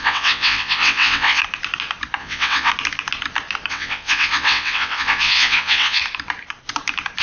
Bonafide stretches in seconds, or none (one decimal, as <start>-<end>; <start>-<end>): 1.4-2.2; 2.7-3.7; 6.0-7.2